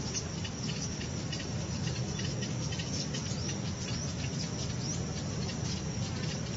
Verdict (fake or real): real